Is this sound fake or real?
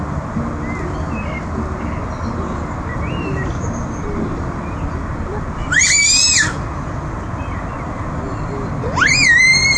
real